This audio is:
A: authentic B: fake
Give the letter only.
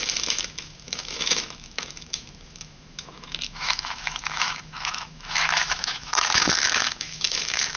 B